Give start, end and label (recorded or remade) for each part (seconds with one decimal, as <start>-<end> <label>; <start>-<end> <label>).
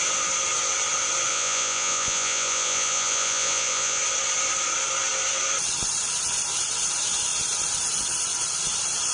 0.0-1.3 recorded; 1.3-4.0 remade; 4.0-9.1 recorded